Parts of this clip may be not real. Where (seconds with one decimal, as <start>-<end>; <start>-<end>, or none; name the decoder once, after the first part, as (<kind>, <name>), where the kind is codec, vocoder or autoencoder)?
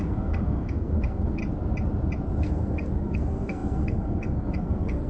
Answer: 0.0-1.4 (codec, SNAC); 2.4-5.1